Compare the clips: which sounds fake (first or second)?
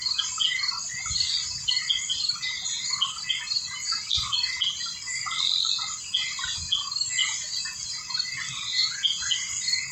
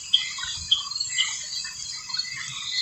second